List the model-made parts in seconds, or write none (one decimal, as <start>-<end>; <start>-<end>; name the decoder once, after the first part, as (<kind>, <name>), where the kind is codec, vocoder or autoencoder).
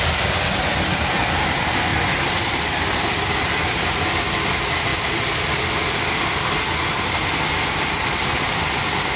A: 0.0-4.9 (vocoder, BigVGAN v2); 6.9-9.2